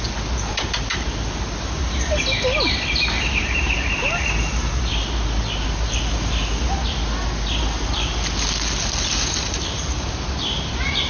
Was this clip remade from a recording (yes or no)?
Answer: no